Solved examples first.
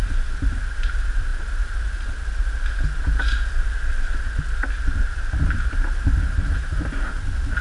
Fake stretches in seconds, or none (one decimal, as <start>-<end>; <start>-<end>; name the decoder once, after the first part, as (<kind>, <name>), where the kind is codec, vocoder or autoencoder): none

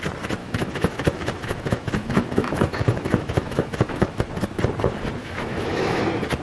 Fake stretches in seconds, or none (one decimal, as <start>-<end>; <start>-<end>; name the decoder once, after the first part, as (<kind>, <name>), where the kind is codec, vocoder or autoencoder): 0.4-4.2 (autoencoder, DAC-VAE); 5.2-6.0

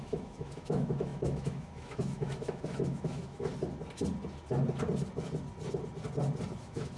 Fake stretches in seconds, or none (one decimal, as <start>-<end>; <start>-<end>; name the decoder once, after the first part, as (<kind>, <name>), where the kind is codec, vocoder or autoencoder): 0.0-3.5 (autoencoder, DAC-VAE); 6.6-7.0

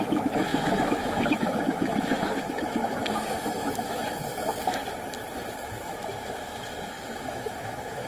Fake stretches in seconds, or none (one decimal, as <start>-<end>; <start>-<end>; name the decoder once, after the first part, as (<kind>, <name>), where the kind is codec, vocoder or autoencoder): 0.0-4.8 (autoencoder, DAC-VAE); 5.6-8.1

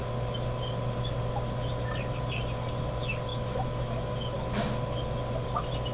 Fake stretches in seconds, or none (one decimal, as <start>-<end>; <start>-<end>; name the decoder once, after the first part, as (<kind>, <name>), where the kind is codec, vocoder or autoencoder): 3.3-4.1 (autoencoder, DAC-VAE)

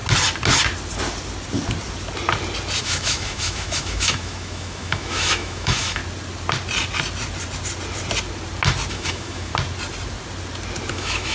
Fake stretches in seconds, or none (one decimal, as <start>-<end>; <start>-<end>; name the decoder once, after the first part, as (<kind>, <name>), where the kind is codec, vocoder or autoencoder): 2.8-6.0 (autoencoder, DAC-VAE); 8.9-9.5; 10.9-11.3

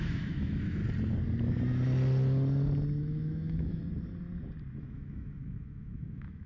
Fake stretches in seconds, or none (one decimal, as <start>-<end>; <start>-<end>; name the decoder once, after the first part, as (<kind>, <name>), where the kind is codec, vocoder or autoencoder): 0.0-0.8 (autoencoder, DAC-VAE); 3.0-3.8; 4.8-6.5

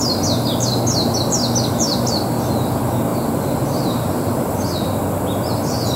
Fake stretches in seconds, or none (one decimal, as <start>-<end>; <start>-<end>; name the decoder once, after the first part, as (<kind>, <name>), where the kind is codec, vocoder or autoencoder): none